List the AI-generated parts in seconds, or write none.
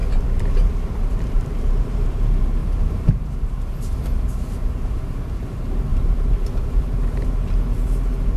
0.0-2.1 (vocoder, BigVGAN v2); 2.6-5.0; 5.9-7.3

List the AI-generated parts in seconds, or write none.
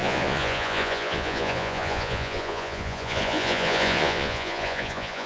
0.0-5.3 (vocoder, Vocos)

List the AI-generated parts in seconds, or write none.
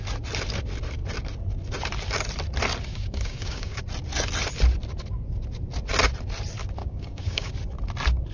2.9-3.8 (codec, DAC); 6.8-7.5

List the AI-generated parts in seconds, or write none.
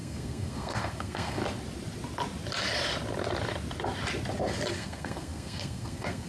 0.0-1.4 (codec, SNAC); 4.7-6.3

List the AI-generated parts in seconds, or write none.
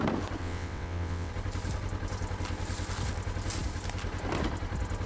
0.4-1.3 (vocoder, WaveNeXt)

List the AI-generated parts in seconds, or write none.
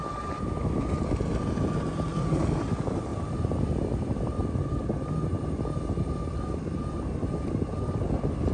none